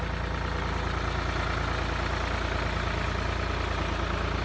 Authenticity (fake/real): real